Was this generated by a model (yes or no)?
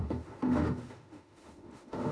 yes